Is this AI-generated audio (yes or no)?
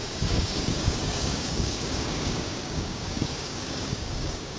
yes